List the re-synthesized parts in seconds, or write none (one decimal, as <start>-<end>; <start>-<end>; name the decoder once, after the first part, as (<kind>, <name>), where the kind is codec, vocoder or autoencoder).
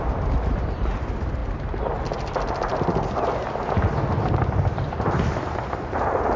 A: none